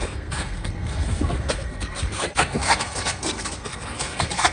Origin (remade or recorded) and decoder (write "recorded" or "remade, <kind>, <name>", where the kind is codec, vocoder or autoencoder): remade, codec, SNAC